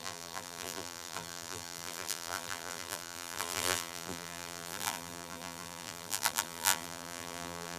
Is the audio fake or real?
fake